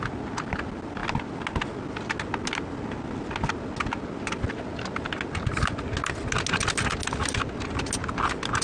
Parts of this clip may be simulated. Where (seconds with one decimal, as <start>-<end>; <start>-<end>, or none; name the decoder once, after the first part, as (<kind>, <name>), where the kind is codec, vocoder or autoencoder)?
none